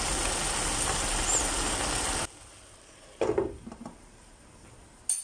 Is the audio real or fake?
real